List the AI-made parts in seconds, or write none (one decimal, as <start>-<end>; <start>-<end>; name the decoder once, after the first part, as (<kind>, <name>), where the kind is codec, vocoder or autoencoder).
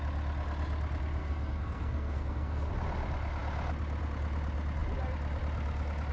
1.2-2.7 (codec, SNAC)